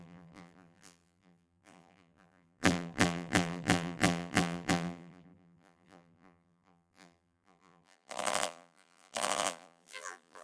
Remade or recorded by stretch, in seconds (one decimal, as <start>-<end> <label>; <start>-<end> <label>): 0.0-10.4 remade